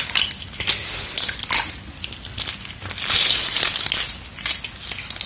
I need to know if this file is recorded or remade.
recorded